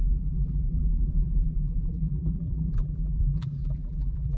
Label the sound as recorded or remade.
remade